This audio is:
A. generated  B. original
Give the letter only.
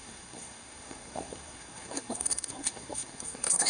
A